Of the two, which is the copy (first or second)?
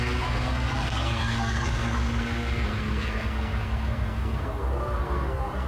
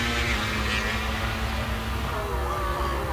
first